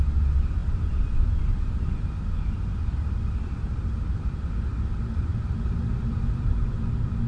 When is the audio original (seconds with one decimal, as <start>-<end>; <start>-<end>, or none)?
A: 0.0-7.3